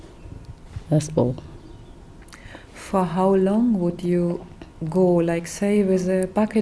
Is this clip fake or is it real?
real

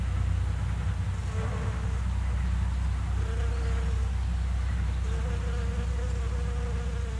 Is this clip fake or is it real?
real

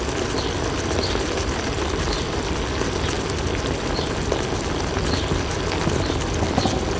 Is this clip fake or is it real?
real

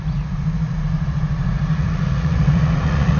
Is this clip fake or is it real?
fake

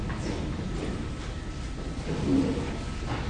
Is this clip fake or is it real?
real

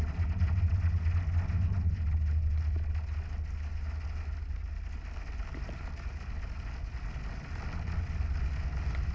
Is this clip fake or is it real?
real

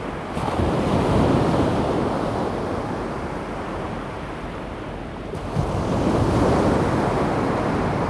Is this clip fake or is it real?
real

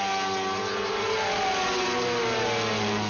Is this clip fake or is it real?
real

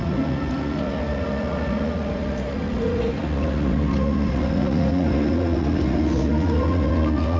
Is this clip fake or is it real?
fake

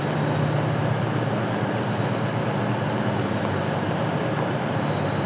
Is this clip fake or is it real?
real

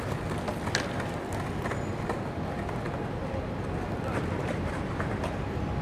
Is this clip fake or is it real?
real